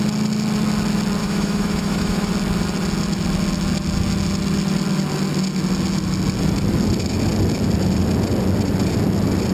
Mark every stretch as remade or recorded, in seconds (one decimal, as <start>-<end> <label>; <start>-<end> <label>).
0.0-1.2 recorded; 1.2-2.3 remade; 2.3-9.5 recorded

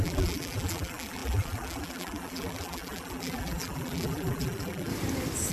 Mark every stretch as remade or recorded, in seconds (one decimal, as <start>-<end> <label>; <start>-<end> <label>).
0.0-4.9 remade; 4.9-5.5 recorded